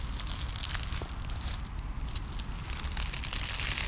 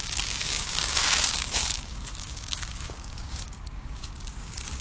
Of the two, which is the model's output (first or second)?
second